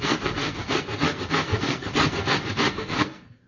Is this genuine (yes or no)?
no